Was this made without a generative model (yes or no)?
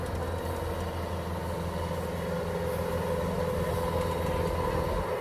yes